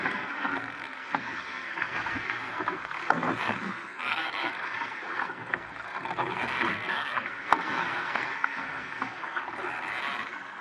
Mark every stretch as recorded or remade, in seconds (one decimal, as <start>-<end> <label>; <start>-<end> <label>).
0.0-9.4 remade; 9.4-10.2 recorded; 10.2-10.6 remade